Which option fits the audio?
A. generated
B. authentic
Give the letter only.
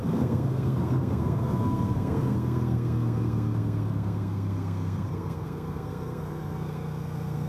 A